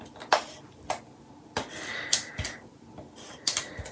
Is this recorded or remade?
recorded